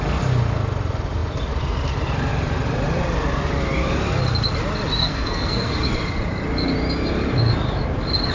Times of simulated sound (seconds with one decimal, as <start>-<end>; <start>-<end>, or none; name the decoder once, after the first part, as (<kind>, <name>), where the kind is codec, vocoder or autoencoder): 5.0-5.7 (codec, SNAC)